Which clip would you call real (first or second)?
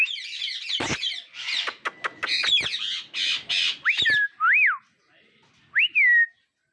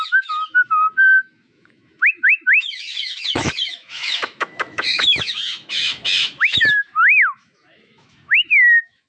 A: first